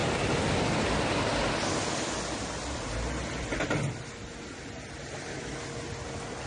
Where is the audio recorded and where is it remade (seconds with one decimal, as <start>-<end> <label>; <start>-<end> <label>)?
0.0-6.5 recorded